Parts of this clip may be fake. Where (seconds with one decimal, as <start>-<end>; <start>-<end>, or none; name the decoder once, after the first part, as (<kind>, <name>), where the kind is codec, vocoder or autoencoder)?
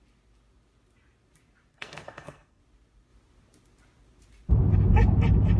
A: 1.7-2.6 (codec, SNAC)